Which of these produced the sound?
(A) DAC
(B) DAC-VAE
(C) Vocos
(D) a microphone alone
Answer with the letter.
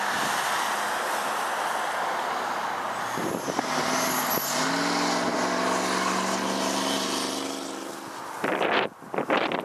D